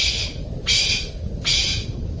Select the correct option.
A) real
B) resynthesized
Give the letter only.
A